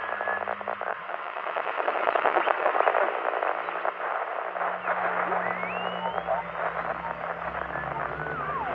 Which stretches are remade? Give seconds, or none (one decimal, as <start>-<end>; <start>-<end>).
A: 0.9-2.7